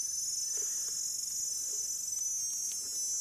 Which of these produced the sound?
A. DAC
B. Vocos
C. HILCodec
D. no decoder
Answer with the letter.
D